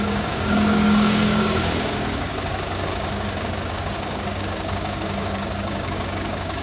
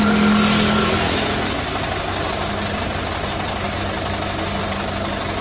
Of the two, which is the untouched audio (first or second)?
second